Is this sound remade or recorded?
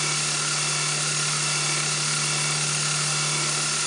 recorded